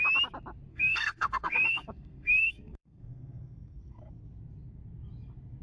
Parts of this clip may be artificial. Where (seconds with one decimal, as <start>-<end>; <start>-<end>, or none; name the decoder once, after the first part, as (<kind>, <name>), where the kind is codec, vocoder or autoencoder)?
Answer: 0.7-4.1 (codec, SNAC)